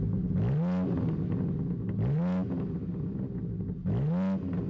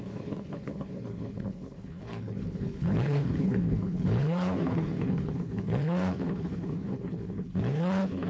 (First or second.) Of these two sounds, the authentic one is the first